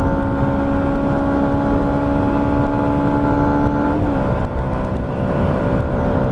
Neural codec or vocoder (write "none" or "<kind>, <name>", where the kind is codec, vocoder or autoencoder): none